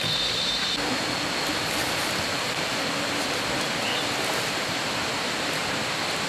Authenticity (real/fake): real